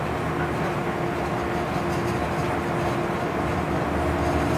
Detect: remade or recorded recorded